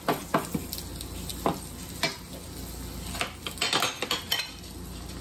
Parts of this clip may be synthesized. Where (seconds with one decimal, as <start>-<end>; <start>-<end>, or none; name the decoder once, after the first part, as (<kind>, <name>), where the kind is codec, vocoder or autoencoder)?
none